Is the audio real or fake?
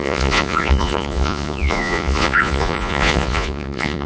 fake